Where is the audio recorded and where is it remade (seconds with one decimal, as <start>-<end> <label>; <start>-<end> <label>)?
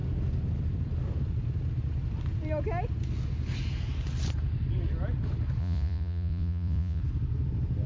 0.0-5.6 recorded; 5.6-7.0 remade; 7.0-7.9 recorded